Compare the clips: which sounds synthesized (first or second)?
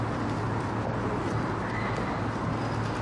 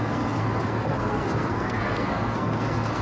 second